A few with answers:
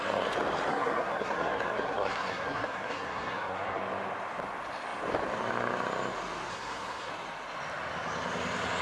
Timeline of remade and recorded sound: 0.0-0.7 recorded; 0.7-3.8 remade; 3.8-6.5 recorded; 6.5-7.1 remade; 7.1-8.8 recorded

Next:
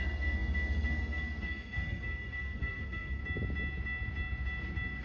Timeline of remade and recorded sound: 0.0-3.2 remade; 3.2-5.0 recorded